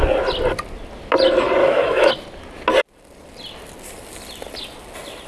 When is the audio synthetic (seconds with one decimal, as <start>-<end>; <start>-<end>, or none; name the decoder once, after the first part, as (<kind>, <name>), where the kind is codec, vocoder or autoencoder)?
1.6-2.1 (autoencoder, DAC-VAE)